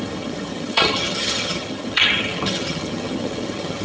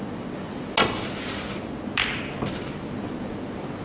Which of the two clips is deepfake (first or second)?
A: first